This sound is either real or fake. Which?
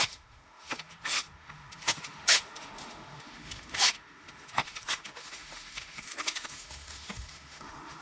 fake